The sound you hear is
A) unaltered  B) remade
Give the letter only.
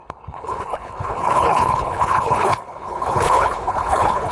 B